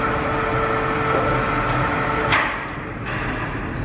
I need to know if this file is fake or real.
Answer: real